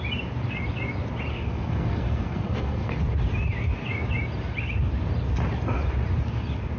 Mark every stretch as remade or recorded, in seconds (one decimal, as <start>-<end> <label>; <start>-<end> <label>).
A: 0.0-1.3 recorded; 1.3-3.0 remade; 3.0-6.8 recorded